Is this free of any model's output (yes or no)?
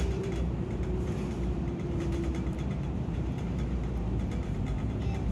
no